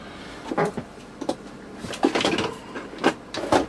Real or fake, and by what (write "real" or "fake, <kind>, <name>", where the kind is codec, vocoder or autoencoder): real